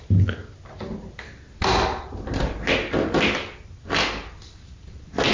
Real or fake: real